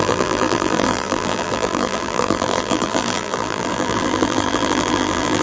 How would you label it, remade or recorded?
remade